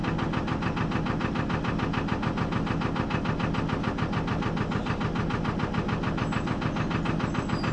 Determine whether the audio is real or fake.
real